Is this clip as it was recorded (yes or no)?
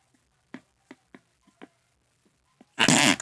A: yes